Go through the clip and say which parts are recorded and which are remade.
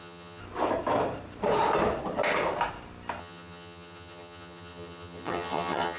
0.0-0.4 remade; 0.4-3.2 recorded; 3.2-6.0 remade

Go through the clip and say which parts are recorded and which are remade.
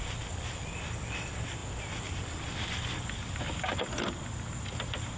0.0-5.2 recorded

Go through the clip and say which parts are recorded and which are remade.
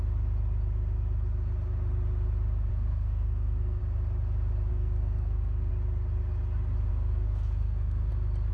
0.0-2.7 recorded; 2.7-3.8 remade; 3.8-4.7 recorded; 4.7-5.7 remade; 5.7-6.9 recorded; 6.9-8.1 remade; 8.1-8.5 recorded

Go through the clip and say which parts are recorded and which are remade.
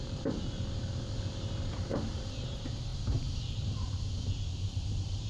0.0-5.3 remade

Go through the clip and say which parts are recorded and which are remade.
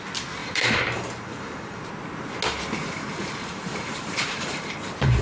0.0-0.4 recorded; 0.4-1.9 remade; 1.9-2.8 recorded; 2.8-5.2 remade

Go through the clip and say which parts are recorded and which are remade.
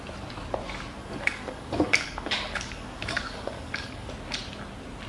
0.0-1.0 recorded; 1.0-4.1 remade; 4.1-5.1 recorded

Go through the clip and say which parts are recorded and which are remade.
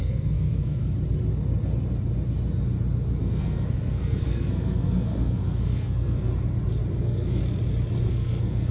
0.0-0.8 remade; 0.8-3.2 recorded; 3.2-6.3 remade; 6.3-7.0 recorded; 7.0-7.4 remade; 7.4-8.1 recorded; 8.1-8.7 remade